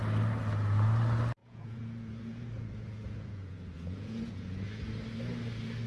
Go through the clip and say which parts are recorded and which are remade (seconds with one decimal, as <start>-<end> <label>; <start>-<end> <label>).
0.0-1.4 recorded; 1.4-4.7 remade; 4.7-5.9 recorded